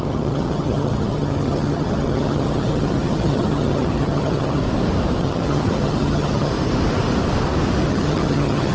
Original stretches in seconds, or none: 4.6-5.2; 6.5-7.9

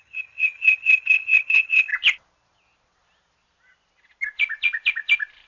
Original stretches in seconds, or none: 1.9-5.5

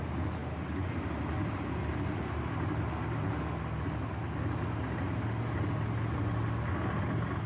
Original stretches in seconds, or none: 0.0-7.5